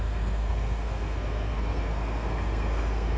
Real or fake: fake